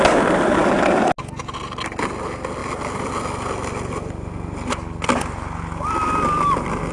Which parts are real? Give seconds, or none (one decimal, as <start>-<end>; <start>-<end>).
0.0-6.9